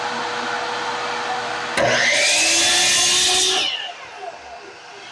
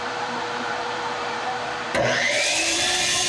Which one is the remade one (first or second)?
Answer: second